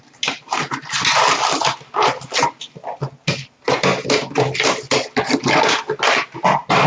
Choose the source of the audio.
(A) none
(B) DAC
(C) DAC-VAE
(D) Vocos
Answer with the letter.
A